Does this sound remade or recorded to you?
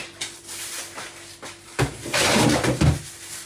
recorded